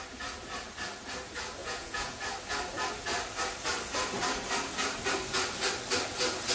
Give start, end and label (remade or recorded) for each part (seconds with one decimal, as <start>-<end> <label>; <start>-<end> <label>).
0.0-1.6 recorded; 1.6-2.2 remade; 2.2-6.5 recorded